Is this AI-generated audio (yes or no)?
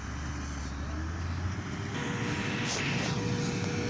no